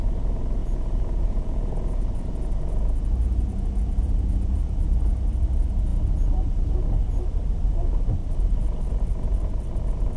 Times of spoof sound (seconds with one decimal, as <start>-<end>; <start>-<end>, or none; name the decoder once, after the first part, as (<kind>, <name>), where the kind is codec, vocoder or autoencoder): 0.6-4.8 (vocoder, Vocos); 5.9-6.5